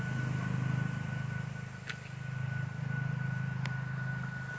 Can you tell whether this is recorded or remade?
recorded